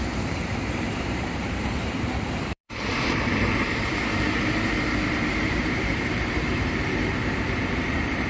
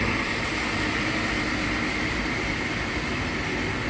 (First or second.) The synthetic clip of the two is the first